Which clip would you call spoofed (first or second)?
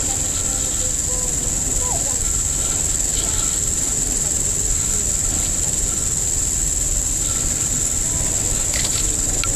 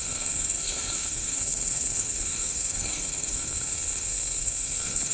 second